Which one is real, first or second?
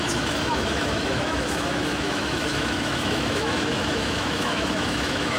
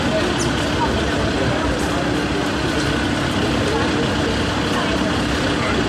second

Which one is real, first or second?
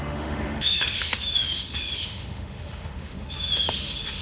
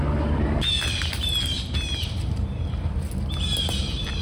second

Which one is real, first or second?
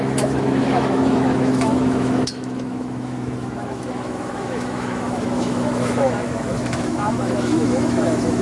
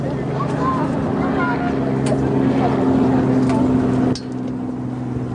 second